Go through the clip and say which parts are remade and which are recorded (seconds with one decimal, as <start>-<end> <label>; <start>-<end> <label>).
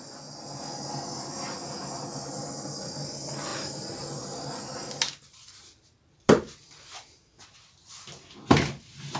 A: 0.0-9.2 recorded